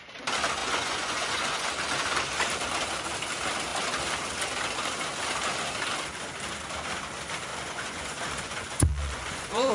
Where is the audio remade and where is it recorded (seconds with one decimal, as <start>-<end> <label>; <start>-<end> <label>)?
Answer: 0.0-0.6 recorded; 0.6-1.7 remade; 1.7-7.5 recorded; 7.5-9.7 remade